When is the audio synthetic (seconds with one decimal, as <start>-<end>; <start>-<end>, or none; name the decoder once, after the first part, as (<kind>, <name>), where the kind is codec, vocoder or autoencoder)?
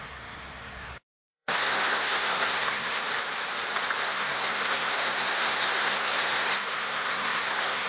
0.0-3.0 (codec, SNAC); 4.0-7.9